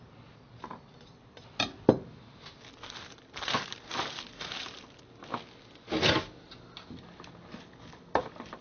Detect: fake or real real